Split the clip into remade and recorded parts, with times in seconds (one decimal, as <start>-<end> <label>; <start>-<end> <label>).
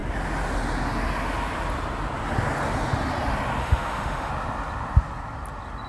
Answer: 0.0-3.6 recorded; 3.6-4.3 remade; 4.3-5.9 recorded